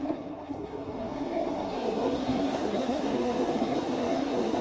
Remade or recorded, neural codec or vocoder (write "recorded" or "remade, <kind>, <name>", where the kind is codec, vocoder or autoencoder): remade, codec, SNAC